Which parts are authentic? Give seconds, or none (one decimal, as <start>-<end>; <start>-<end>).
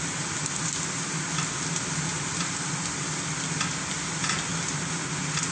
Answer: 0.0-5.5